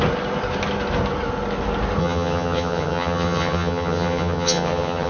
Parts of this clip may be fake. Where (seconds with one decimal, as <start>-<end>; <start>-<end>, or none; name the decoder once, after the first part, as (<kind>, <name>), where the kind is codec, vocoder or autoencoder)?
2.0-5.1 (vocoder, HiFi-GAN)